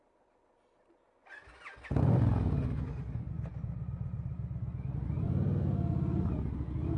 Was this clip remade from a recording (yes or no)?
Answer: no